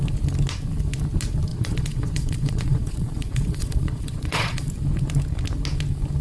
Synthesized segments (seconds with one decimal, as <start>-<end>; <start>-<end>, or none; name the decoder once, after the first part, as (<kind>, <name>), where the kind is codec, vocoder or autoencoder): 1.5-4.7 (vocoder, Vocos)